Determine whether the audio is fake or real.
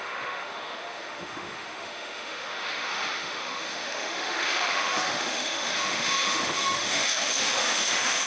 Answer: fake